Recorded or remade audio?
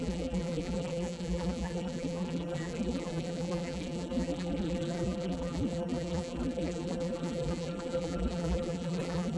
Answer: remade